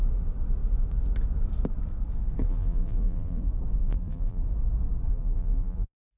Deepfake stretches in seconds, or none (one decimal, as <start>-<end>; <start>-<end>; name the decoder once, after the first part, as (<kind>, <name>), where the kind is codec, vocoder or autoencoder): 2.4-3.4 (vocoder, BigVGAN v2); 3.8-4.4; 5.1-6.2